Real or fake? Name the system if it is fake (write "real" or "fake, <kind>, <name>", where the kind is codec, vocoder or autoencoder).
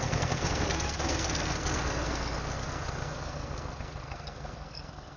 fake, codec, SNAC